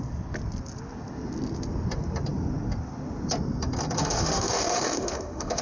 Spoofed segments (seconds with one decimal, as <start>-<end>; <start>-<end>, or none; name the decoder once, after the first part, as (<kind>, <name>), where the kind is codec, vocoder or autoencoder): 4.0-5.6 (autoencoder, DAC-VAE)